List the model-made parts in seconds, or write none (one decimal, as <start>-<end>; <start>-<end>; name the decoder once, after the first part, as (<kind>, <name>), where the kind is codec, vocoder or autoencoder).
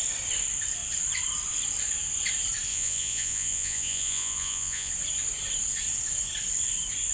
2.7-4.9 (vocoder, Vocos)